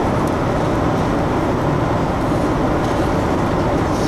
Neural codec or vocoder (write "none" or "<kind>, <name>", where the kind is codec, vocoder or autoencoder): none